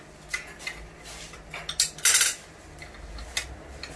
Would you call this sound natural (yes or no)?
yes